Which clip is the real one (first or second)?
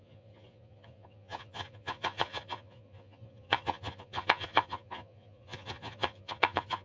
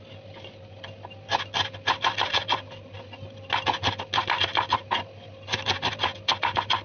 second